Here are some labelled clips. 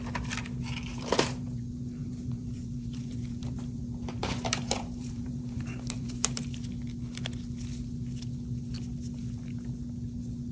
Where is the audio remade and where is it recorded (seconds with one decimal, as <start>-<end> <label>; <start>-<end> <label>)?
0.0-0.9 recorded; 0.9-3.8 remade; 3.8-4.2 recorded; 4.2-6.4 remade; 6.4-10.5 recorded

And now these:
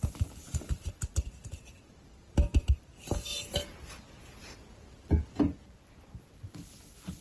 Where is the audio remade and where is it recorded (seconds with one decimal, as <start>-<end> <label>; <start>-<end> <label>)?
0.0-3.3 remade; 3.3-5.4 recorded; 5.4-7.2 remade

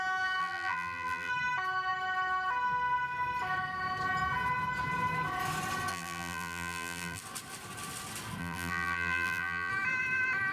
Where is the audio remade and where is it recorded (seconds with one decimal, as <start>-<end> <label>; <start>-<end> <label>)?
0.0-0.4 recorded; 0.4-1.3 remade; 1.3-5.9 recorded; 5.9-7.2 remade; 7.2-8.4 recorded; 8.4-9.7 remade; 9.7-10.5 recorded